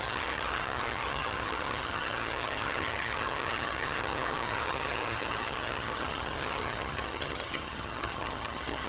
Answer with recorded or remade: remade